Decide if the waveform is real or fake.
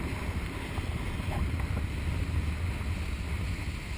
real